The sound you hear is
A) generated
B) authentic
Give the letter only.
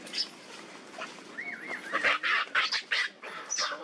B